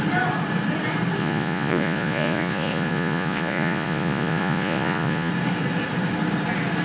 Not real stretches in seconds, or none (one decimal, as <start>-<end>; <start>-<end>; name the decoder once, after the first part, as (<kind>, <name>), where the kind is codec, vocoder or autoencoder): 1.2-5.3 (vocoder, Vocos)